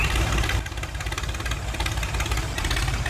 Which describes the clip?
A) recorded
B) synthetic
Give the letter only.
A